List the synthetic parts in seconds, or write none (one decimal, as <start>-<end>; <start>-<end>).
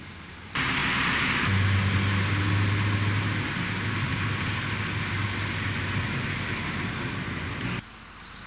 none